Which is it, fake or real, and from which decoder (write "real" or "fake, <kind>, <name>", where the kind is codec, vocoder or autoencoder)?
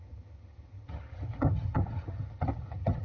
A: fake, vocoder, HiFi-GAN